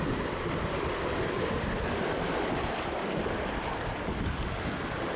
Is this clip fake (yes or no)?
no